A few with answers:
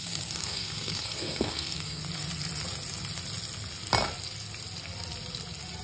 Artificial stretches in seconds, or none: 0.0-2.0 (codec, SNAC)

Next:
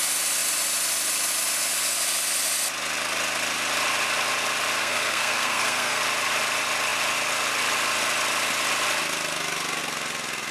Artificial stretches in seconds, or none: 4.8-6.0 (codec, SNAC)